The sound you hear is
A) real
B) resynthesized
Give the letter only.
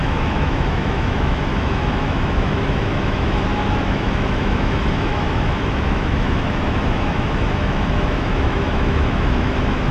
B